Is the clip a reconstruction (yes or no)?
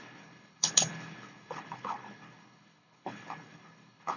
yes